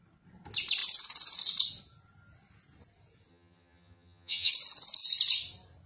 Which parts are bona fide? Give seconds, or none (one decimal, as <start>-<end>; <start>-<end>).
0.0-3.3; 4.5-5.9